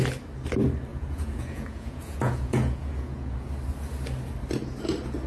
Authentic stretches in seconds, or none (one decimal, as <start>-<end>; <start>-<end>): 0.0-0.9; 3.5-5.3